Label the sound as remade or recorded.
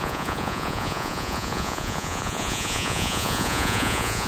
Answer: remade